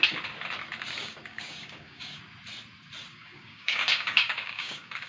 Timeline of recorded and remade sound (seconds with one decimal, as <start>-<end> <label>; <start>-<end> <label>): 0.0-1.0 recorded; 1.0-2.2 remade; 2.2-3.1 recorded; 3.1-5.1 remade